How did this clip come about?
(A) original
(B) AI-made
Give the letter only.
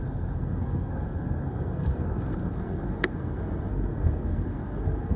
B